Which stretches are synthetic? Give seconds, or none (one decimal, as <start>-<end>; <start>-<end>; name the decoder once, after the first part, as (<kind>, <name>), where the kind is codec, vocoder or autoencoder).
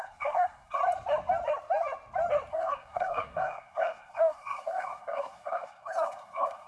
0.0-0.8 (codec, SNAC); 2.5-6.7